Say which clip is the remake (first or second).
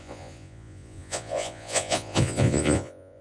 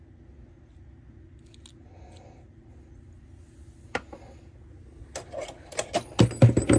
first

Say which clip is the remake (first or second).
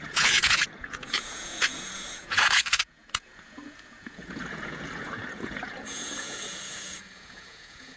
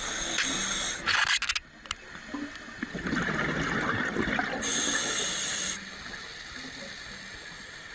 first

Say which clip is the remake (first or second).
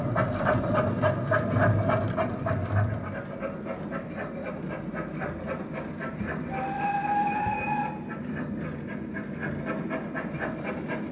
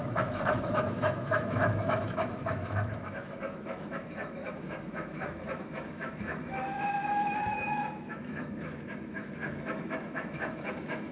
second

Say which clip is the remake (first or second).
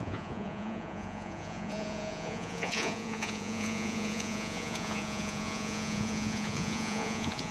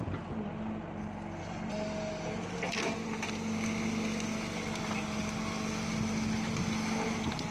first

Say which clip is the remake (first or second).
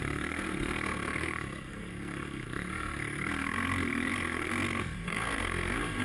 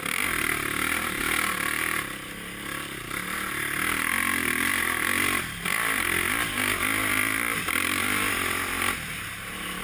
first